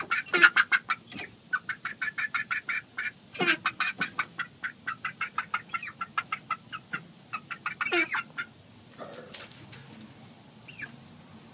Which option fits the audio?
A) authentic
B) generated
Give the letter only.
A